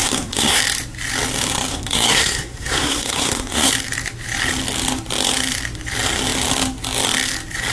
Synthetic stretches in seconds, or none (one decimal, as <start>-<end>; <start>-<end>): 0.0-0.6; 1.7-3.7